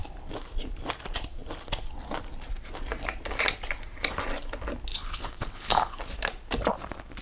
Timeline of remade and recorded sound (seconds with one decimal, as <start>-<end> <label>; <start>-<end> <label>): 0.0-4.9 recorded; 4.9-6.0 remade; 6.0-7.2 recorded